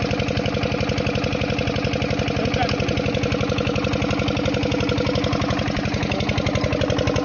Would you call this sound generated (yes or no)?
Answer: no